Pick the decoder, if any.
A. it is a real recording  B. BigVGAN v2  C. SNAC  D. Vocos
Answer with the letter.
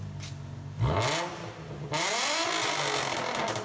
A